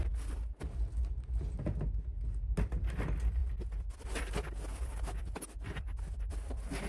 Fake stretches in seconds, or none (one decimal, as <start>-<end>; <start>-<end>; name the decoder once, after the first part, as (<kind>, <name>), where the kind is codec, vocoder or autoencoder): none